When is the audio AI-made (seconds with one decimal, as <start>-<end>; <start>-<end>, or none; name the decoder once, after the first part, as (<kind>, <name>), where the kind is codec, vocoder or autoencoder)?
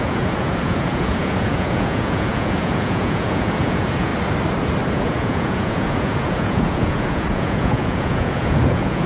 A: 0.0-4.1 (vocoder, Vocos); 4.9-9.1